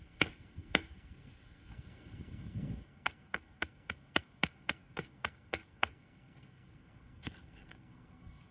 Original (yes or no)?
no